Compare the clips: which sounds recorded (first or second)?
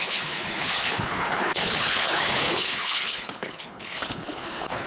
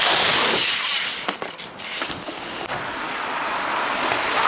second